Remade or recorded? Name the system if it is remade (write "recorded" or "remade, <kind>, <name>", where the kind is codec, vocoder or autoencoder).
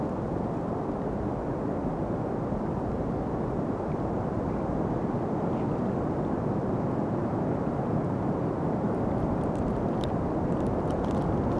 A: recorded